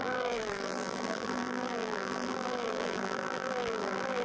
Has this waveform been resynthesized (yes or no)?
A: yes